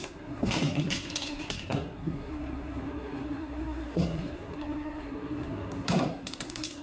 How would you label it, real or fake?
fake